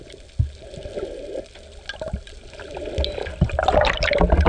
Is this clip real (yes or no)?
yes